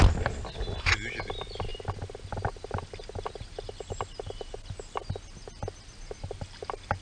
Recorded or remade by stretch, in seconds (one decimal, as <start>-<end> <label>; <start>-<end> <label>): 0.0-7.0 recorded